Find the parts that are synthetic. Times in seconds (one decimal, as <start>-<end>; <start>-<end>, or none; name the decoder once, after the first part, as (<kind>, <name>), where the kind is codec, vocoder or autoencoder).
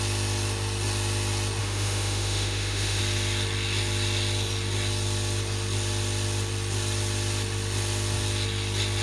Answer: 1.6-3.0 (autoencoder, DAC-VAE)